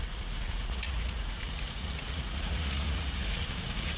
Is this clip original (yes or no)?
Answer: no